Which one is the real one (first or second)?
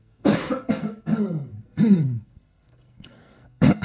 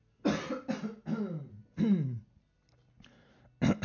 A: second